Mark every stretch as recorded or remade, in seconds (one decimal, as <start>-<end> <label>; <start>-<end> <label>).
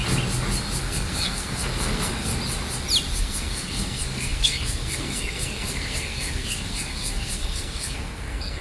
0.0-0.8 recorded; 0.8-2.3 remade; 2.3-3.2 recorded; 3.2-8.6 remade